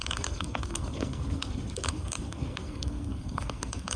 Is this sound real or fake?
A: fake